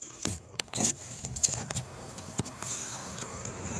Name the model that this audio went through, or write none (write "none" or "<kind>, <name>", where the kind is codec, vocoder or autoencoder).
codec, SNAC